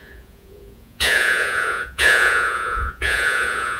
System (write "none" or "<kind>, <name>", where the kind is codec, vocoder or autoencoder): vocoder, Vocos